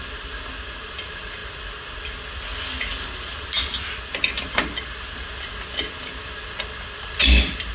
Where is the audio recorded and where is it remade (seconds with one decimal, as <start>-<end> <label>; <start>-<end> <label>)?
0.0-7.7 recorded